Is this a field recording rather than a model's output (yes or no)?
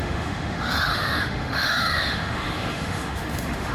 no